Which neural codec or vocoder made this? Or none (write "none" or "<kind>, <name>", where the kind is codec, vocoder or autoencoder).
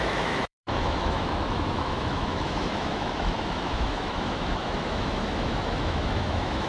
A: autoencoder, DAC-VAE